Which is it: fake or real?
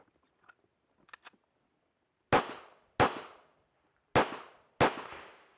real